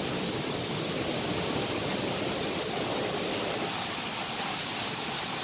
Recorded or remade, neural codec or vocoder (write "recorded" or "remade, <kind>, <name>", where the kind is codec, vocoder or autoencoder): recorded